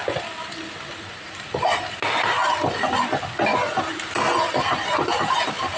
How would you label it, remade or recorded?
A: recorded